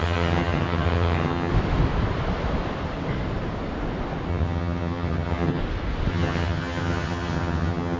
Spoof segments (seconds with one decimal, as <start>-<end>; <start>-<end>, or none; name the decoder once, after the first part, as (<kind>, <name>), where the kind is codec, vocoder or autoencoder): 0.0-1.5 (vocoder, HiFi-GAN); 4.3-5.6; 6.1-8.0